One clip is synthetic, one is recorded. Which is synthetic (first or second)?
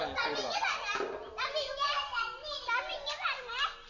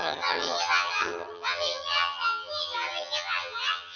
second